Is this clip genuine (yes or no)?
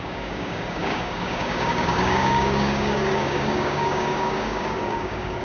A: no